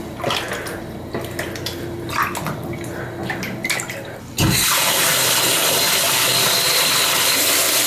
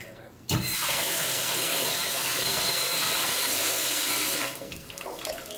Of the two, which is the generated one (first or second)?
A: second